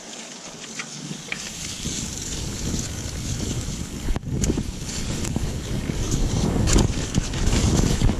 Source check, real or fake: fake